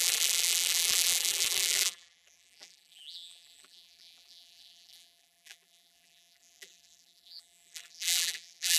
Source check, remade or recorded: remade